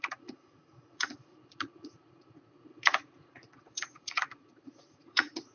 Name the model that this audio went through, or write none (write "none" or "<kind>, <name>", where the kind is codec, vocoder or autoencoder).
vocoder, Vocos